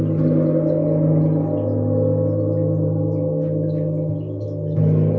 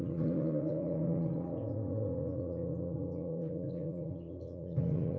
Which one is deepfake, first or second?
second